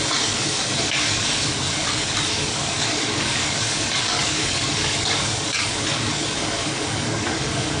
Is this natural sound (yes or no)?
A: no